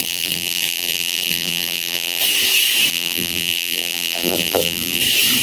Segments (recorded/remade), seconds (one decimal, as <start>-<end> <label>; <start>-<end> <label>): 0.0-2.2 remade; 2.2-2.9 recorded; 2.9-5.0 remade; 5.0-5.4 recorded